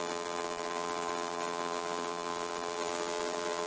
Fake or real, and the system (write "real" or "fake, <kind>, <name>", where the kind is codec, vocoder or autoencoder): fake, vocoder, BigVGAN v2